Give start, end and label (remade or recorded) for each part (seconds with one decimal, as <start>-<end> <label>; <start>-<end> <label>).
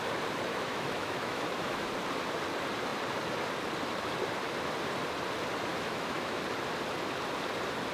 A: 0.0-0.5 recorded; 0.5-1.9 remade; 1.9-5.7 recorded; 5.7-6.4 remade; 6.4-7.9 recorded